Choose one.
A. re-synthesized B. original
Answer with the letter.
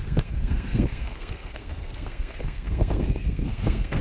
A